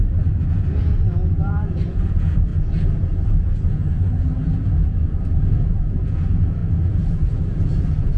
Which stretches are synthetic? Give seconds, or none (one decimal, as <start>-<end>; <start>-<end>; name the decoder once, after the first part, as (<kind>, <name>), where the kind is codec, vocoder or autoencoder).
0.0-8.2 (vocoder, Vocos)